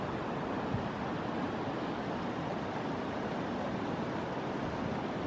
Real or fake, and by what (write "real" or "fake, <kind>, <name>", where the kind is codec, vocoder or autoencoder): real